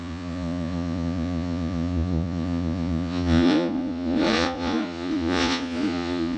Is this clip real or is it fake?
fake